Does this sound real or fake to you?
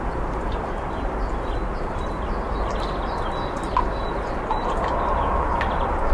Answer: fake